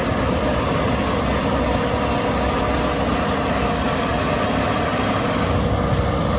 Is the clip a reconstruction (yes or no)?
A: no